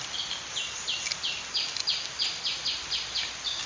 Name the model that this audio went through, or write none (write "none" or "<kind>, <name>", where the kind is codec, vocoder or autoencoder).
none